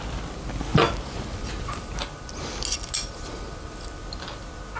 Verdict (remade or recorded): recorded